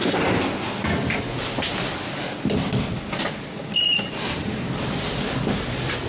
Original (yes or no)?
yes